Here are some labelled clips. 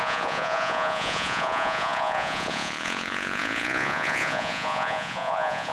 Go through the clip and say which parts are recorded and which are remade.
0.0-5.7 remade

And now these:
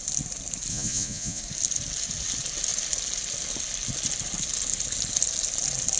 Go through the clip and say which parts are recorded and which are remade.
0.0-0.7 recorded; 0.7-1.4 remade; 1.4-6.0 recorded

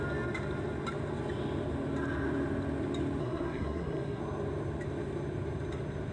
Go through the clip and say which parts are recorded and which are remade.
0.0-3.2 recorded; 3.2-4.2 remade; 4.2-6.1 recorded

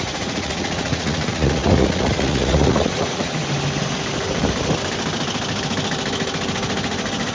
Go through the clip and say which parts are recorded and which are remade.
0.0-3.4 remade; 3.4-7.3 recorded

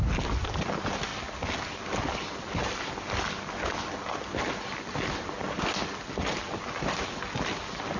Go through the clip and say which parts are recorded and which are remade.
0.0-8.0 recorded